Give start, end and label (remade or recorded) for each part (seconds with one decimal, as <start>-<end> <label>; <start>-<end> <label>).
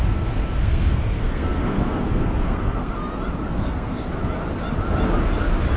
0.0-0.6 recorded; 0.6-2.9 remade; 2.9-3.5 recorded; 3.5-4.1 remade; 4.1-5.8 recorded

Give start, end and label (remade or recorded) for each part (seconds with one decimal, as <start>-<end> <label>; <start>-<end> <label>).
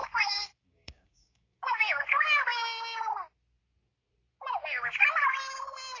0.0-2.1 remade; 2.1-6.0 recorded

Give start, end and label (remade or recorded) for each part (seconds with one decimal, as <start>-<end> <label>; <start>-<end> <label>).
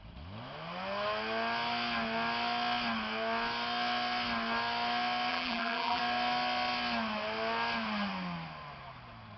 0.0-5.3 recorded; 5.3-6.0 remade; 6.0-9.4 recorded